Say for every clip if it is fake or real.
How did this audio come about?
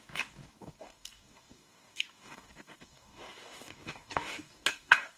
fake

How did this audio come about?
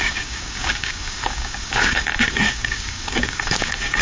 fake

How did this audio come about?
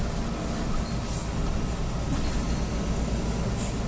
real